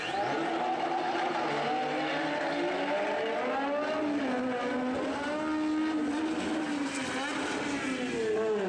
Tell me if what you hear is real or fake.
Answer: real